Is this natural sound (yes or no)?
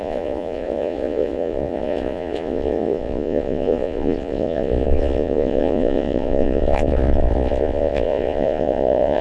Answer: no